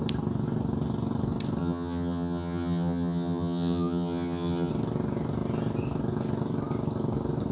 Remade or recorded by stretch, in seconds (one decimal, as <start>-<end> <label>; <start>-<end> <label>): 0.0-1.6 recorded; 1.6-4.7 remade; 4.7-7.5 recorded